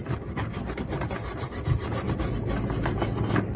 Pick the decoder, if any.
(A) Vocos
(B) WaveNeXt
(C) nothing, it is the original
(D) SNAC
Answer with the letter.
C